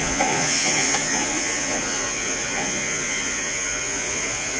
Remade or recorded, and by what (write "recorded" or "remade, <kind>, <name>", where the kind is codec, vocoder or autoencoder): remade, vocoder, Vocos